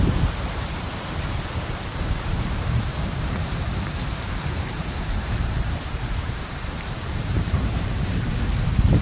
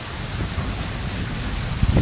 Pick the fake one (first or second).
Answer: first